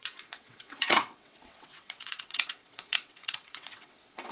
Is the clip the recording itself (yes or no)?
no